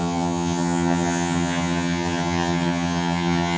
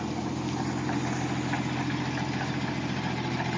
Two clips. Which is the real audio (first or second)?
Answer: second